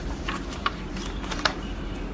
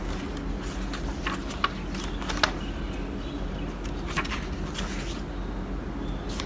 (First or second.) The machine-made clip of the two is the first